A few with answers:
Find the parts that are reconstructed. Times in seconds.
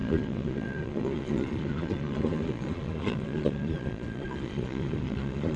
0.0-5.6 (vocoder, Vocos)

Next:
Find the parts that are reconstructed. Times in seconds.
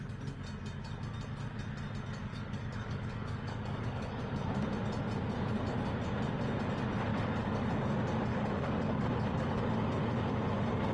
2.3-4.2 (codec, DAC); 7.1-7.7; 8.3-9.6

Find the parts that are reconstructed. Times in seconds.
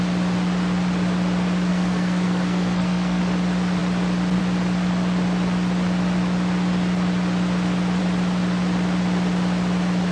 1.7-3.2 (codec, SNAC)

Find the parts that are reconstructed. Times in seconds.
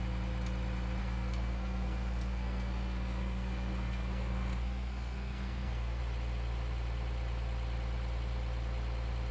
1.0-6.0 (codec, SNAC)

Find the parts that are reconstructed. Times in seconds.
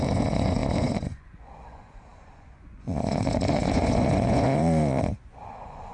0.0-5.9 (vocoder, Vocos)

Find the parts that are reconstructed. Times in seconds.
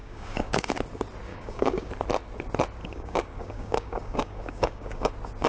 0.0-0.7 (codec, DAC); 1.3-1.9; 2.8-5.1